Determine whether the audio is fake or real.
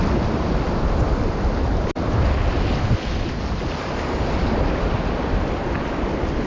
real